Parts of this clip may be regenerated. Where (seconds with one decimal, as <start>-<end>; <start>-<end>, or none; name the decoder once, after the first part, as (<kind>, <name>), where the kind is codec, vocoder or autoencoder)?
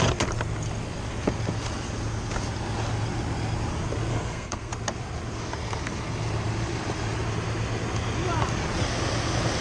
4.1-4.7 (codec, SNAC)